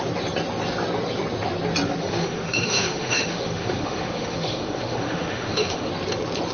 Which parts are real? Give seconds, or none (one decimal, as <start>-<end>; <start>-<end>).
0.0-2.0; 5.9-6.5